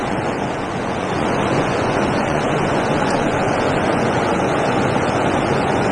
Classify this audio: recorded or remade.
remade